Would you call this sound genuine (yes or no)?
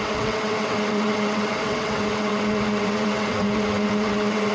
no